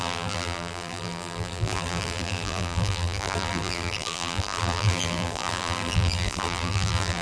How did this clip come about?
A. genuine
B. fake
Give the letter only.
B